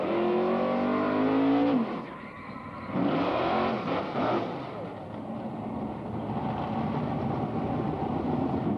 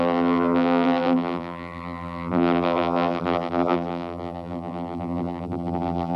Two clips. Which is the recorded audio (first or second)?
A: first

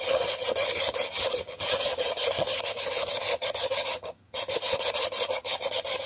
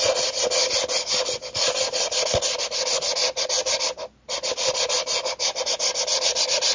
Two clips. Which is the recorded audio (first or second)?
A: second